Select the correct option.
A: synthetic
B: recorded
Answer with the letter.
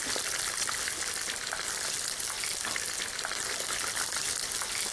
B